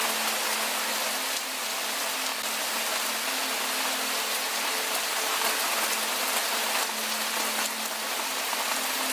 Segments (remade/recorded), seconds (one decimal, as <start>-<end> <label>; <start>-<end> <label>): 0.0-9.1 recorded